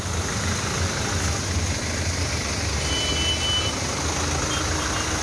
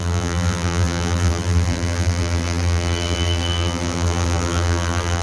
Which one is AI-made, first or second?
second